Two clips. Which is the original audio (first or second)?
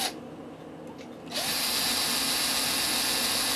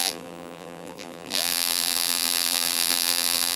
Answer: first